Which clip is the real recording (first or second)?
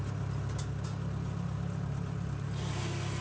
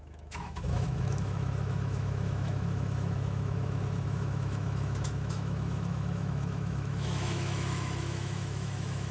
first